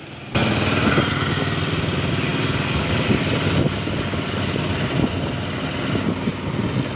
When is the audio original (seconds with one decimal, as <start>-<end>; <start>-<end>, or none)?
0.0-7.0